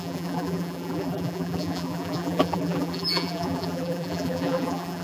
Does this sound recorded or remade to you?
remade